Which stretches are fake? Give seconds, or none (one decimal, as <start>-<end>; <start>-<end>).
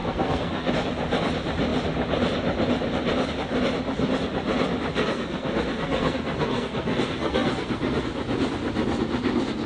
0.0-0.7; 4.9-8.1